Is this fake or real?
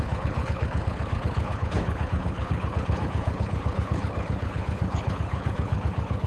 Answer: fake